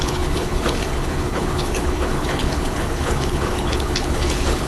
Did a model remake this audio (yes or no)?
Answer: yes